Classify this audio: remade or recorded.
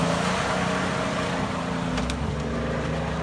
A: recorded